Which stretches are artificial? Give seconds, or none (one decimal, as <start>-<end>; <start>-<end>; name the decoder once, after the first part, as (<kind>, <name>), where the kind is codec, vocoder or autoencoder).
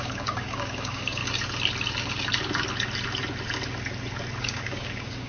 0.0-1.2 (codec, DAC); 4.4-5.3